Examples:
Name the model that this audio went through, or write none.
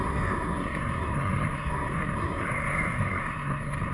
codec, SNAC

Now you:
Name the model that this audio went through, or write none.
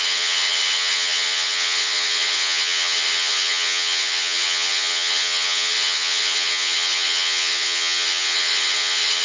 vocoder, HiFi-GAN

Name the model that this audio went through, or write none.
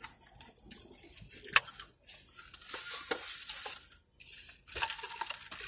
none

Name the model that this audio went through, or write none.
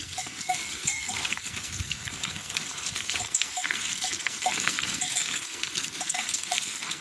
codec, SNAC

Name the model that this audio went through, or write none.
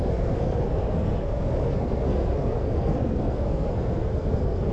codec, SNAC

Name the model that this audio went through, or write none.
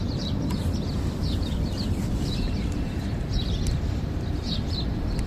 none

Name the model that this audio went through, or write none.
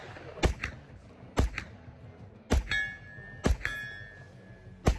none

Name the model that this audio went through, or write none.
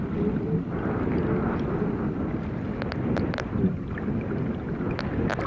none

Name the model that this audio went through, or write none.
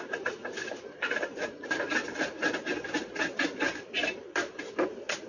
vocoder, BigVGAN v2